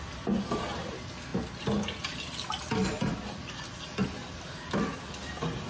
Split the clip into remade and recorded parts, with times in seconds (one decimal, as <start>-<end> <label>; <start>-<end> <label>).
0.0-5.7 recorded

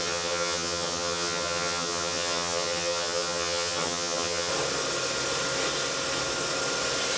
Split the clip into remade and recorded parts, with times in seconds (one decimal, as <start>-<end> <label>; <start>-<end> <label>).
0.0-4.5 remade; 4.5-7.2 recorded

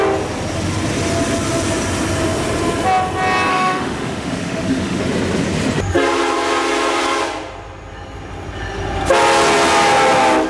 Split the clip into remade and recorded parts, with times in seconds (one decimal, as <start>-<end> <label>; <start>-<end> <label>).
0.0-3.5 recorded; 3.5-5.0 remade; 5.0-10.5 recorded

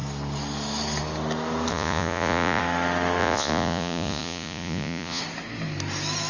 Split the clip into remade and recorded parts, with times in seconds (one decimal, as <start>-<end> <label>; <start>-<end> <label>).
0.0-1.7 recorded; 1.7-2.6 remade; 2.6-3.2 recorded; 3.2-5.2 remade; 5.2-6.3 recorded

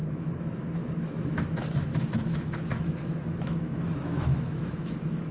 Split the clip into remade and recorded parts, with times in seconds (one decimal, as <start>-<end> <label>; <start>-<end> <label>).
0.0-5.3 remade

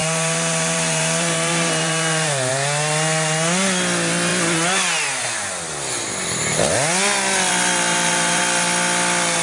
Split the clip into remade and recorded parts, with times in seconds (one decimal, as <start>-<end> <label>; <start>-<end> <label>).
0.0-2.5 remade; 2.5-7.9 recorded; 7.9-8.4 remade; 8.4-9.4 recorded